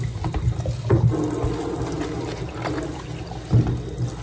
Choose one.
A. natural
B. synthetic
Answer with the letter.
A